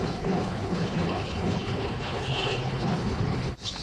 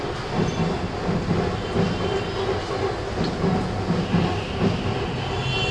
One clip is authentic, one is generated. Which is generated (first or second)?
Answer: first